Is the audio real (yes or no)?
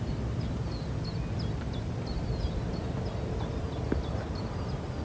yes